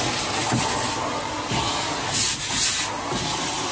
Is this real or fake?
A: real